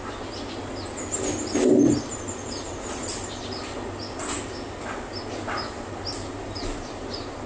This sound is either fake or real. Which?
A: real